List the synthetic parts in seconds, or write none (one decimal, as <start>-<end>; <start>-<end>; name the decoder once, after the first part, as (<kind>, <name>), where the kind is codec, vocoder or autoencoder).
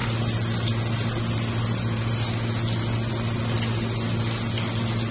none